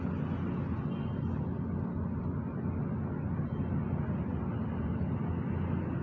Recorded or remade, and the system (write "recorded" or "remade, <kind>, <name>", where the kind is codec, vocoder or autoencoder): recorded